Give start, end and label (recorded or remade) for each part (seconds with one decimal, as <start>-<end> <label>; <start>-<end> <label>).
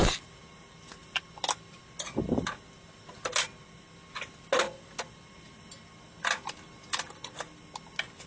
0.0-8.3 recorded